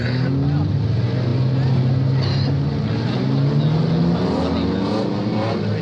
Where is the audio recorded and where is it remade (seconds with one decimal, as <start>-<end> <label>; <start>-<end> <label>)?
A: 0.0-5.8 recorded